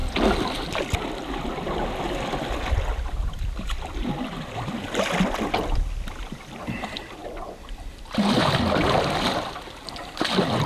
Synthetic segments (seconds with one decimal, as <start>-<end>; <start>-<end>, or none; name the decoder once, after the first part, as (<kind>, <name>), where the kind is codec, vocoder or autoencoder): none